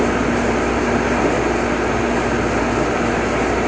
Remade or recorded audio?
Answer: recorded